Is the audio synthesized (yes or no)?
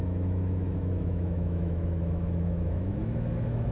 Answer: yes